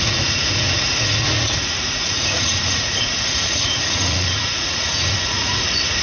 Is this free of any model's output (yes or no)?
no